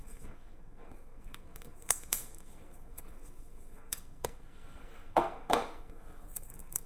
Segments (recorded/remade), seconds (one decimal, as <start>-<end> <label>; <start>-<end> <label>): 0.0-6.9 remade